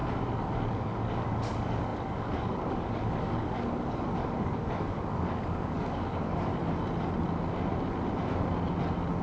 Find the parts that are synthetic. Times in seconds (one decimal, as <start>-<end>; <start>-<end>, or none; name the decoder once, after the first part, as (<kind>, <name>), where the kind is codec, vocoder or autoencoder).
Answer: 0.7-6.5 (codec, DAC)